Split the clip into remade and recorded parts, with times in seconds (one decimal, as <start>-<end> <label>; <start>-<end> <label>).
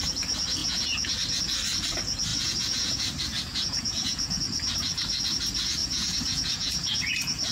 0.0-0.6 recorded; 0.6-1.1 remade; 1.1-2.3 recorded; 2.3-3.0 remade; 3.0-3.5 recorded; 3.5-4.4 remade; 4.4-5.8 recorded; 5.8-7.1 remade; 7.1-7.5 recorded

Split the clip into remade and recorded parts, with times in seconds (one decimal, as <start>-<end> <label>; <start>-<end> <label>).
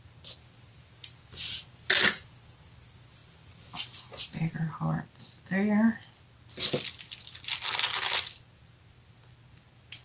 0.0-10.0 recorded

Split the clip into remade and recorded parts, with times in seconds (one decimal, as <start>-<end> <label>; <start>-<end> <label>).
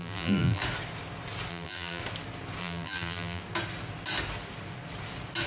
0.0-0.6 remade; 0.6-1.5 recorded; 1.5-2.0 remade; 2.0-2.6 recorded; 2.6-3.4 remade; 3.4-5.5 recorded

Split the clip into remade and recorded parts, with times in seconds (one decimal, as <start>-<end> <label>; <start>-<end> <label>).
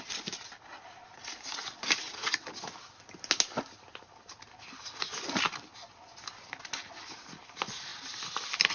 0.0-8.7 recorded